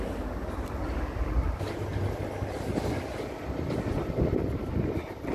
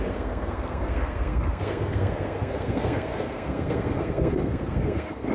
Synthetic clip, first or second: second